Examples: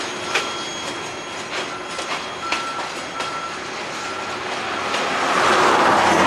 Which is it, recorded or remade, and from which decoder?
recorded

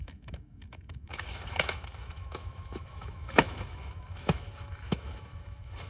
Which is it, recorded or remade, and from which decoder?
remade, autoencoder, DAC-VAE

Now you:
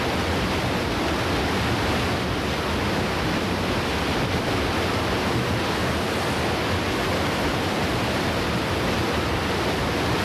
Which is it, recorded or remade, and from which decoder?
recorded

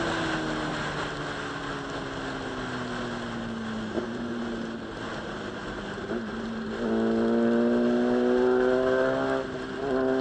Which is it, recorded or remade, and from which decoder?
recorded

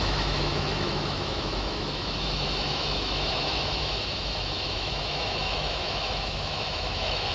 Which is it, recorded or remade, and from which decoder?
remade, autoencoder, DAC-VAE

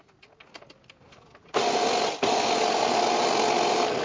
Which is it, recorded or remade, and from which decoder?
recorded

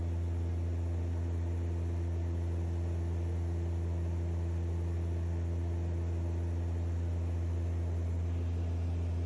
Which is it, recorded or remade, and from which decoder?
recorded